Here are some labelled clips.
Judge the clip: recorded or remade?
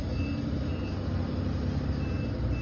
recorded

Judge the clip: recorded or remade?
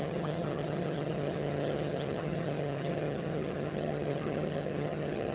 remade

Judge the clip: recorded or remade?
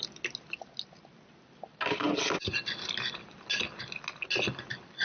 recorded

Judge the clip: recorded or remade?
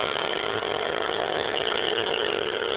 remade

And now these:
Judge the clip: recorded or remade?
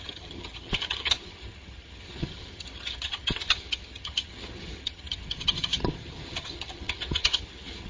remade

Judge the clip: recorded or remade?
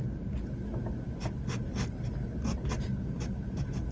recorded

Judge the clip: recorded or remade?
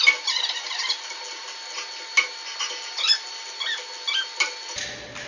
recorded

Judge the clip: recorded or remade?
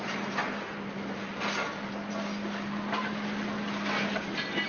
recorded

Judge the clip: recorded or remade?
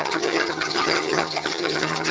remade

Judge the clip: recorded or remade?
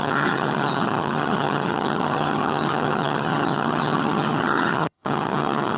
remade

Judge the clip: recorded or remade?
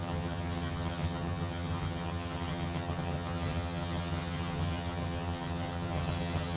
remade